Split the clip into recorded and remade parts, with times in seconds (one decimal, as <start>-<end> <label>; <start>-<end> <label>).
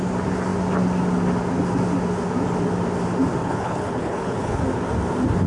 0.0-3.4 recorded; 3.4-4.6 remade; 4.6-5.5 recorded